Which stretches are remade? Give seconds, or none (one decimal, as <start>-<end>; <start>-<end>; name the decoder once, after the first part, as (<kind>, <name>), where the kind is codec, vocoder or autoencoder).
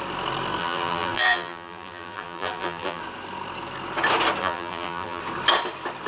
0.6-3.0 (vocoder, BigVGAN v2); 4.4-5.2